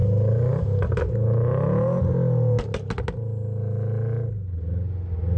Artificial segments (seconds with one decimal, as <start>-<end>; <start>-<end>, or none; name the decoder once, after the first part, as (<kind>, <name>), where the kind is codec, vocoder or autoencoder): none